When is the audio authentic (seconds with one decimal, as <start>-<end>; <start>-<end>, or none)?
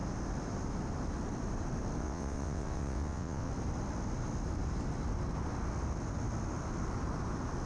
0.0-2.0; 3.5-7.7